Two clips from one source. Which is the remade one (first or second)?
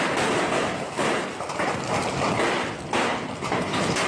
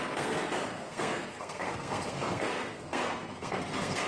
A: second